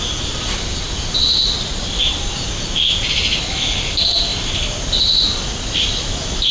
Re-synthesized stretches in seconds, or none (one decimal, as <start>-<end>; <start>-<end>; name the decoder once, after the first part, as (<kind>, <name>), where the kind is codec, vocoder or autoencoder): none